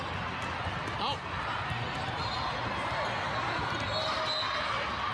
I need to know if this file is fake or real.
real